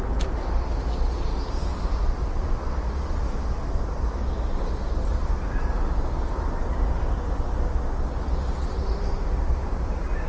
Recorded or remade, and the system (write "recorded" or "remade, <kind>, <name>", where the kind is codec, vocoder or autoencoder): recorded